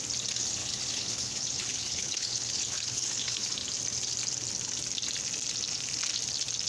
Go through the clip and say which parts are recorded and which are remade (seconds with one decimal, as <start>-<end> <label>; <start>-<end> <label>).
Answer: 0.0-0.6 recorded; 0.6-3.5 remade; 3.5-6.7 recorded

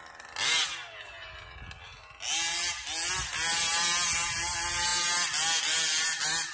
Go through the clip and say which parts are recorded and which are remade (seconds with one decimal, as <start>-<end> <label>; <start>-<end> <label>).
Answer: 0.0-6.5 recorded

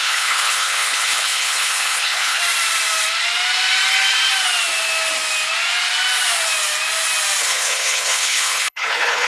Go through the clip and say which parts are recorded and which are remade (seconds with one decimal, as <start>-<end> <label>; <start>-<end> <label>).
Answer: 0.0-2.4 remade; 2.4-7.4 recorded; 7.4-9.3 remade

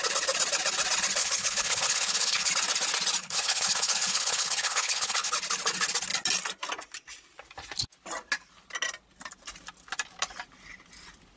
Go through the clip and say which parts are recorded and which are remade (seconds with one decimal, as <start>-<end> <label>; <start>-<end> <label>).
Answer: 0.0-1.2 recorded; 1.2-2.5 remade; 2.5-3.2 recorded; 3.2-5.3 remade; 5.3-11.4 recorded

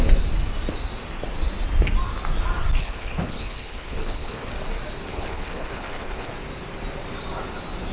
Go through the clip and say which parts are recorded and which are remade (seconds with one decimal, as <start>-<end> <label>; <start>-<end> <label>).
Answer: 0.0-2.8 recorded; 2.8-4.5 remade; 4.5-5.1 recorded; 5.1-6.3 remade; 6.3-7.9 recorded

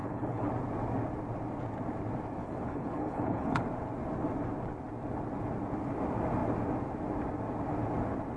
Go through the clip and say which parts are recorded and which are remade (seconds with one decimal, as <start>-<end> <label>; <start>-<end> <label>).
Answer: 0.0-0.5 remade; 0.5-2.4 recorded; 2.4-3.6 remade; 3.6-8.4 recorded